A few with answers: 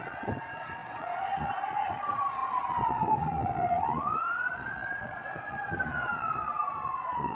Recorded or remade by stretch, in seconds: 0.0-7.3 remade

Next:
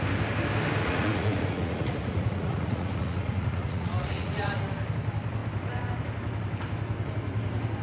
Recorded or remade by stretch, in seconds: 0.0-0.8 recorded; 0.8-4.6 remade; 4.6-7.8 recorded

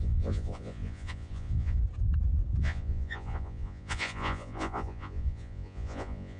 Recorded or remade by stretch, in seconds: 0.0-1.8 remade; 1.8-2.6 recorded; 2.6-6.4 remade

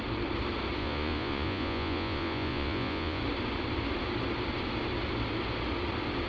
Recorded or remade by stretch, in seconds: 0.0-0.8 recorded; 0.8-3.2 remade; 3.2-6.3 recorded

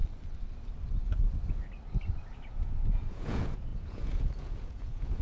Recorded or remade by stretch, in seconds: 0.0-2.5 recorded; 2.5-5.2 remade

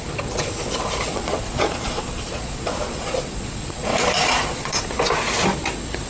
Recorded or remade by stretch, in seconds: 0.0-1.1 recorded; 1.1-4.8 remade; 4.8-6.1 recorded

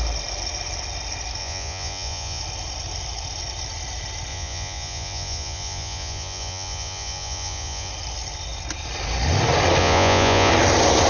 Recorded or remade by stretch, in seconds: 0.0-1.4 recorded; 1.4-2.4 remade; 2.4-4.3 recorded; 4.3-7.9 remade; 7.9-9.8 recorded; 9.8-10.5 remade; 10.5-11.1 recorded

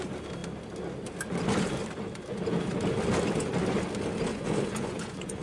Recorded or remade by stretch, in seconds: 0.0-4.3 recorded; 4.3-5.4 remade